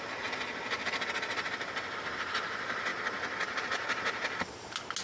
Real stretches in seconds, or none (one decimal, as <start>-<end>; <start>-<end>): 0.0-5.0